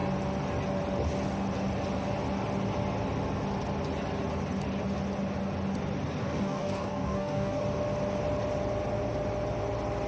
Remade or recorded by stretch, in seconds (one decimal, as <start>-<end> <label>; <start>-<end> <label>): 0.0-6.2 recorded; 6.2-7.6 remade; 7.6-10.1 recorded